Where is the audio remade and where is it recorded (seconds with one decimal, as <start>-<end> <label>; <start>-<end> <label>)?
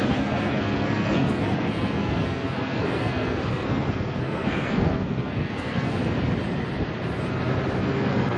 0.0-6.0 remade; 6.0-7.8 recorded; 7.8-8.4 remade